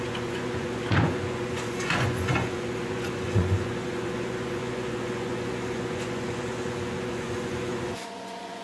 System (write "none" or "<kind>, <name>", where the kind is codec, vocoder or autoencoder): vocoder, Vocos